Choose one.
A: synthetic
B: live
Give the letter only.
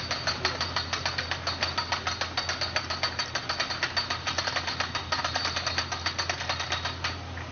B